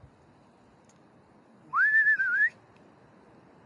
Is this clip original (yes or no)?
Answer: yes